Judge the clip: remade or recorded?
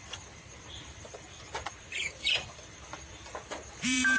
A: remade